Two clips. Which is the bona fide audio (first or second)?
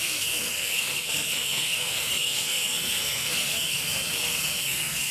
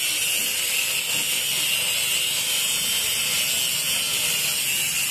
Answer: second